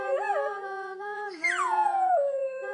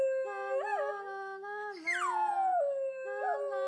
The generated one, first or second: first